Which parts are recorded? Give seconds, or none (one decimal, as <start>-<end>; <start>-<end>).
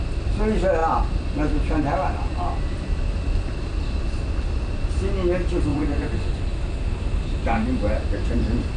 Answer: 0.0-5.7; 6.4-8.8